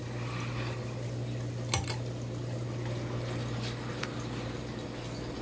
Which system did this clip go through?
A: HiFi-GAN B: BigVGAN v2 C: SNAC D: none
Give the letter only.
D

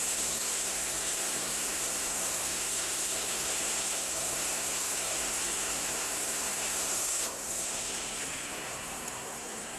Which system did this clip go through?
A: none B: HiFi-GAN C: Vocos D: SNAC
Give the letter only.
D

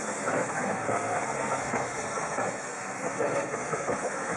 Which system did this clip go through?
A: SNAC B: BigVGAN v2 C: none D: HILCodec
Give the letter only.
A